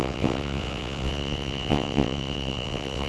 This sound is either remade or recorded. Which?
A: remade